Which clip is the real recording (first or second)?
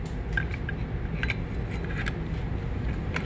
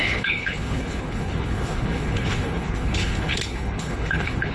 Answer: first